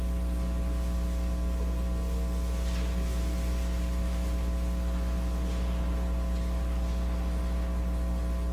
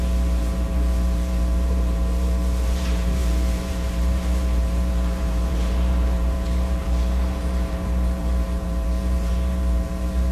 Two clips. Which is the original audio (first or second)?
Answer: first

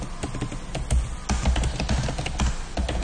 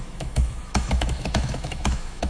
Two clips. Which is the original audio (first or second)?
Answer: first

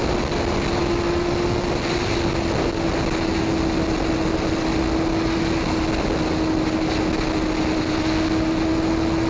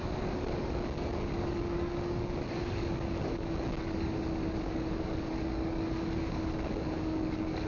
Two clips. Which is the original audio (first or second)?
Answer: first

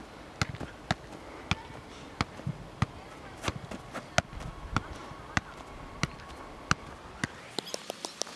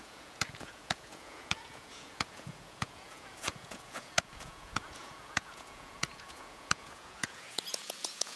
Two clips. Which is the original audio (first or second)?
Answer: first